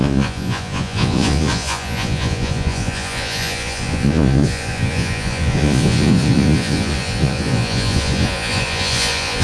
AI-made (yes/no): yes